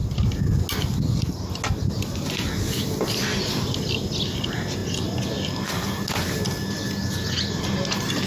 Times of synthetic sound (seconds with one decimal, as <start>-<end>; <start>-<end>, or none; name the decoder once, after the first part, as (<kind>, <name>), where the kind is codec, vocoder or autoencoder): none